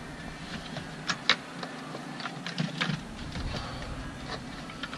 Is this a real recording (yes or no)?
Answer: yes